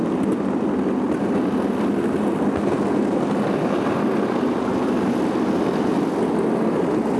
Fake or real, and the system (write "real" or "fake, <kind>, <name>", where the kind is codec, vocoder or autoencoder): real